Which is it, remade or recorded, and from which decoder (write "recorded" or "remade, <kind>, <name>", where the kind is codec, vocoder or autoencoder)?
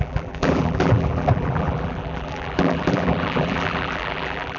remade, vocoder, BigVGAN v2